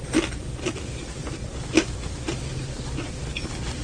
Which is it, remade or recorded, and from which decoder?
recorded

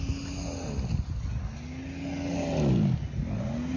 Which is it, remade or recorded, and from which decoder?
recorded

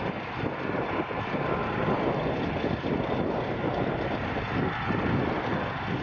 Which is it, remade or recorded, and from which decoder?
recorded